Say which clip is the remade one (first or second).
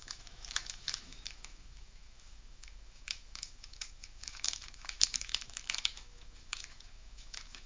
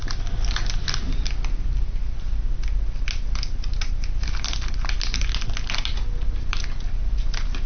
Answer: first